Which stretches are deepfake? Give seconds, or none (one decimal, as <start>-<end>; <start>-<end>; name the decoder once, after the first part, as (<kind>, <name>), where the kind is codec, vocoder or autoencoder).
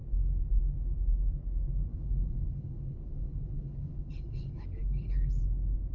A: 1.9-5.4 (codec, HILCodec)